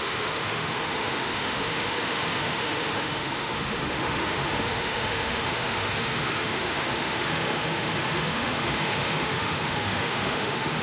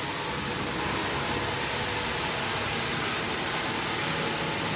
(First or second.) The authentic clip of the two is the second